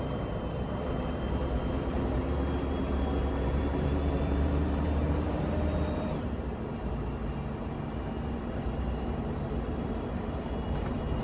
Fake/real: fake